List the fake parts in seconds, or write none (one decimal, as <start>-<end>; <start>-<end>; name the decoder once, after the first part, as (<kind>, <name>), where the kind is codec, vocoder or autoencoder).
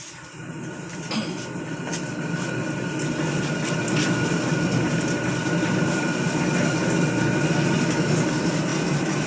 none